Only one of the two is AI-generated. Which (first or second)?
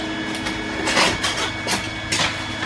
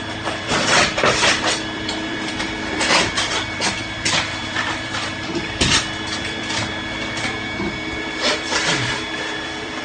second